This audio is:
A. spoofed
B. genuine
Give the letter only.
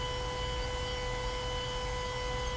B